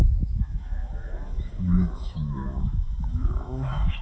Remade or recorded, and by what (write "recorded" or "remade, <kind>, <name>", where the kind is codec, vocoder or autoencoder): remade, autoencoder, DAC-VAE